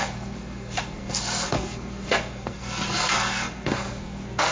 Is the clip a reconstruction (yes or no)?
yes